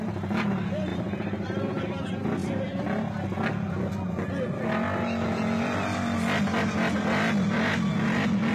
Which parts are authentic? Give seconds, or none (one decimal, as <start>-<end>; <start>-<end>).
0.0-0.9; 2.0-8.5